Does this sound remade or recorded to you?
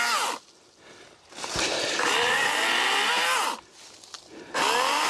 recorded